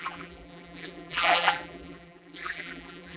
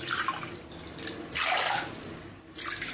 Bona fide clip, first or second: second